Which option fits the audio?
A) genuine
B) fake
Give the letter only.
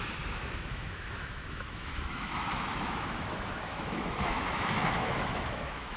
B